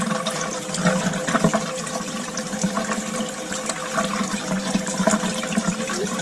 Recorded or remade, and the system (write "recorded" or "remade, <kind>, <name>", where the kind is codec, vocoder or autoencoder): recorded